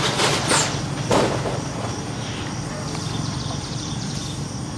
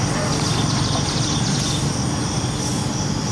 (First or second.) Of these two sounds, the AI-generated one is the first